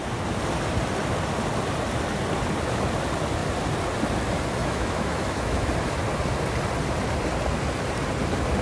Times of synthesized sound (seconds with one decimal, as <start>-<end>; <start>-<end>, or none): 4.6-5.7